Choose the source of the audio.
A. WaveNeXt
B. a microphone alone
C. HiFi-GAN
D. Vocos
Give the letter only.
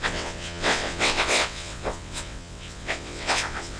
A